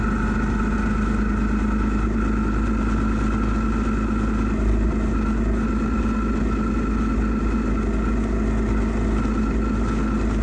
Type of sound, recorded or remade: recorded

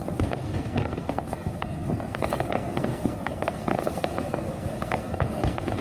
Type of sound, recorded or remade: remade